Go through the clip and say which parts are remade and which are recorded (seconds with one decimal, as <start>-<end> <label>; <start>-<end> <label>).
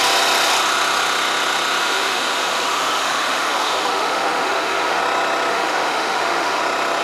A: 0.0-1.8 recorded; 1.8-5.0 remade; 5.0-5.5 recorded; 5.5-6.6 remade; 6.6-7.0 recorded